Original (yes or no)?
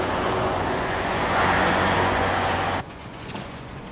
no